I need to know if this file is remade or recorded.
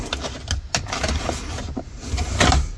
recorded